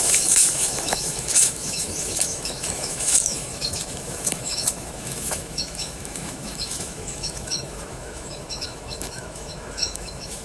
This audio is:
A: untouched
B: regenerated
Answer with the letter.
B